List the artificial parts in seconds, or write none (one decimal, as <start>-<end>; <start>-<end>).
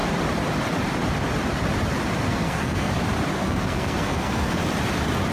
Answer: 2.3-2.9; 3.4-4.6